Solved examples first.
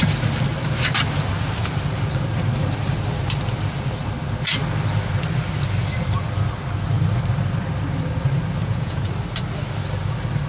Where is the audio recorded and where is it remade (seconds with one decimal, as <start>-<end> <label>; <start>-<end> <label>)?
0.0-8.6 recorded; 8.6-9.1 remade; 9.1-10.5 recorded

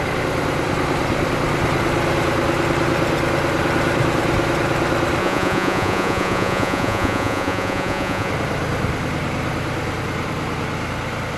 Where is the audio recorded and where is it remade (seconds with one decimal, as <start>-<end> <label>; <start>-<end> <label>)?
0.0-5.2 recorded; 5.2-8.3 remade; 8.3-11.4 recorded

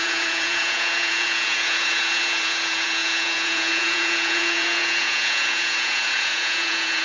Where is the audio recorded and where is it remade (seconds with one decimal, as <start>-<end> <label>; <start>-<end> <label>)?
0.0-7.0 remade